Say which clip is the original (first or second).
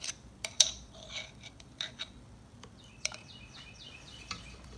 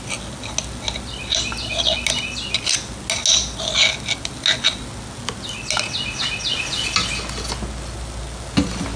second